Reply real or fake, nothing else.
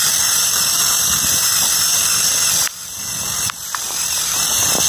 real